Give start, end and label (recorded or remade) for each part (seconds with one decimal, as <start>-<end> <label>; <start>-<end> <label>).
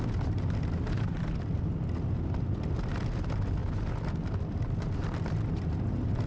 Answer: 0.0-6.3 recorded